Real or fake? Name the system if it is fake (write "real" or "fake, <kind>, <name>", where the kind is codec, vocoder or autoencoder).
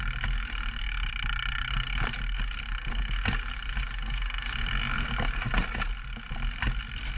real